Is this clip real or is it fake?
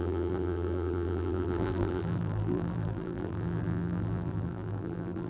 fake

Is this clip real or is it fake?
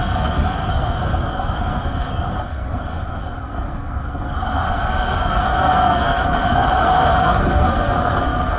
fake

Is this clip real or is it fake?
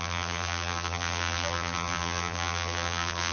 fake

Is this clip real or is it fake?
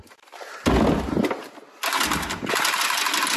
real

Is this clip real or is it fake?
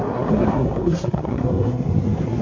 fake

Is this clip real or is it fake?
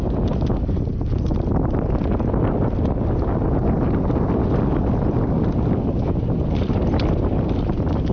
real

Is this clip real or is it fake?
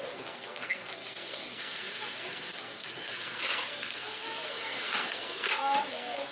fake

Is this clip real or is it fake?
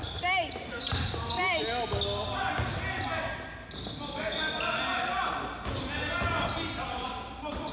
real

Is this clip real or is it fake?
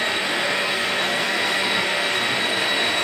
fake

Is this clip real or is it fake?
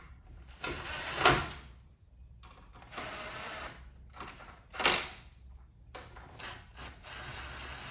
real